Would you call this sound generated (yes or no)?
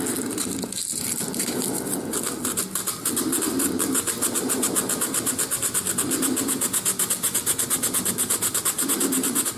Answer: no